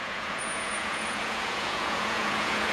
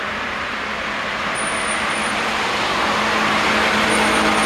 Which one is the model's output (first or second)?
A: first